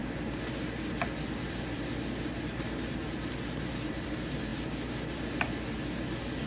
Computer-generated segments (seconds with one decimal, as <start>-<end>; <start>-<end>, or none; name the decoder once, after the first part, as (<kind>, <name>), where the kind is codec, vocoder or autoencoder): none